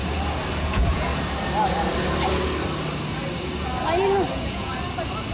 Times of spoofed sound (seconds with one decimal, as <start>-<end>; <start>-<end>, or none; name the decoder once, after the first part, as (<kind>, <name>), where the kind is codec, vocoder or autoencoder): 0.6-1.1 (vocoder, Vocos); 4.3-4.7